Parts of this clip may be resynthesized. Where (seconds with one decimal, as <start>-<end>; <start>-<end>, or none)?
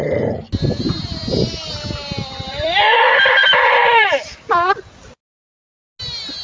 1.0-4.5